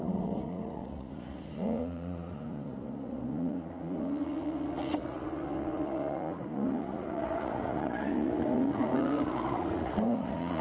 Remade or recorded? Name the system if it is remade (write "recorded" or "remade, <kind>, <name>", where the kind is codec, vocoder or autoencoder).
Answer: remade, vocoder, Vocos